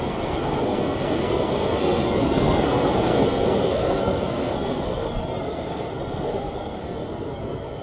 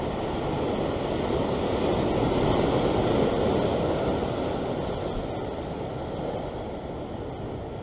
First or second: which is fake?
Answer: first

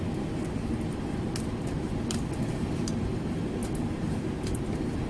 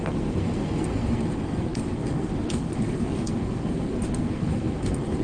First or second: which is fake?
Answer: second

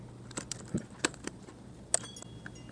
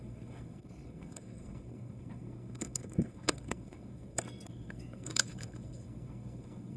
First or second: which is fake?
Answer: second